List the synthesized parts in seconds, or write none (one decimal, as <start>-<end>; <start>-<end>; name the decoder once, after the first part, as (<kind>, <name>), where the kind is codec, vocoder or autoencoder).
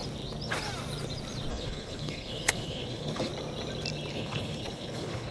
1.5-3.3 (codec, HILCodec); 4.1-5.3